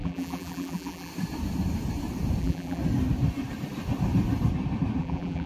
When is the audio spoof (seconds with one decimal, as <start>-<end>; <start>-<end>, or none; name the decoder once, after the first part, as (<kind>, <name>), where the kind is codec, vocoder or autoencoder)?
0.0-1.1 (vocoder, BigVGAN v2); 2.4-2.8; 5.0-5.5